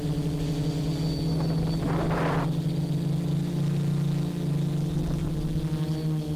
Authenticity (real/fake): real